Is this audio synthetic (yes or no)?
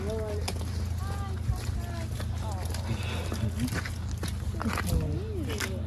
no